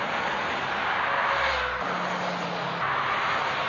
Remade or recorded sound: recorded